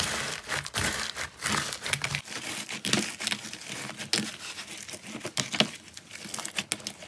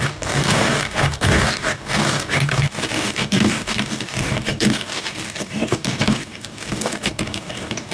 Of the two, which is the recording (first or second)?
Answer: first